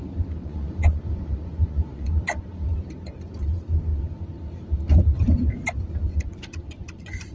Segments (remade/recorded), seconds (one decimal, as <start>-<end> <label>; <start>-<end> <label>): 0.0-0.4 recorded; 0.4-2.1 remade; 2.1-6.1 recorded; 6.1-7.3 remade